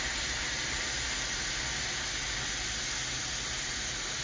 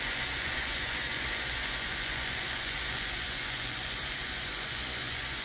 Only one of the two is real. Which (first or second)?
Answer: first